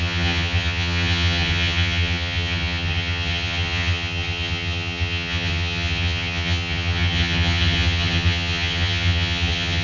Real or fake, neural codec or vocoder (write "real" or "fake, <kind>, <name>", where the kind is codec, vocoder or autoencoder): fake, vocoder, HiFi-GAN